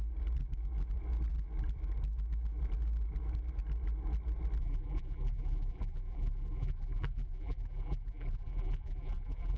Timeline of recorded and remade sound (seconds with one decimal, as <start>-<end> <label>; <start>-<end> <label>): 0.0-4.6 recorded; 4.6-9.6 remade